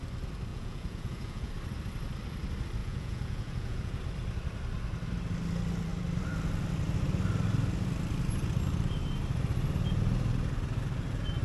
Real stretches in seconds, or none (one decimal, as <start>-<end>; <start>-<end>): 0.0-0.5; 1.5-2.8; 4.0-11.4